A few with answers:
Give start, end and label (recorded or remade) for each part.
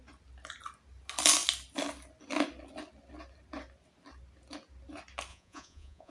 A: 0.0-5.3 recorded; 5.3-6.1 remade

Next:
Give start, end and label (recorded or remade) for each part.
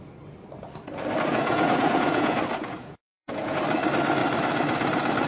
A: 0.0-1.3 recorded; 1.3-3.6 remade; 3.6-5.3 recorded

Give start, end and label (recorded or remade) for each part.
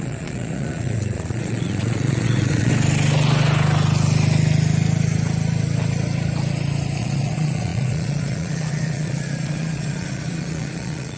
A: 0.0-2.7 remade; 2.7-7.0 recorded; 7.0-11.2 remade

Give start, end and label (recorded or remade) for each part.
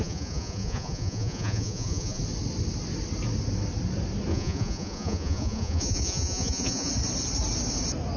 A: 0.0-2.2 remade; 2.2-4.3 recorded; 4.3-6.9 remade; 6.9-8.2 recorded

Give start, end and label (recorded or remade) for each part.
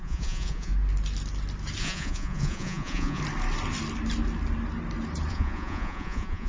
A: 0.0-0.7 remade; 0.7-1.8 recorded; 1.8-3.2 remade; 3.2-5.3 recorded; 5.3-6.5 remade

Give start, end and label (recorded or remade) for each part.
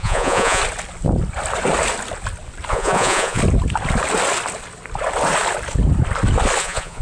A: 0.0-0.6 remade; 0.6-2.7 recorded; 2.7-3.4 remade; 3.4-6.6 recorded; 6.6-7.0 remade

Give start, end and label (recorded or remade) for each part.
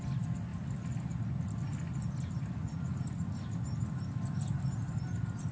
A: 0.0-5.5 recorded